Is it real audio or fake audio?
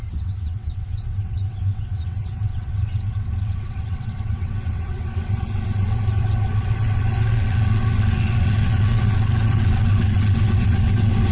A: fake